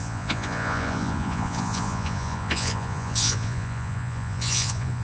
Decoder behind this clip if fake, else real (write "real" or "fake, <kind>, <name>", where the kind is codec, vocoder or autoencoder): fake, vocoder, Vocos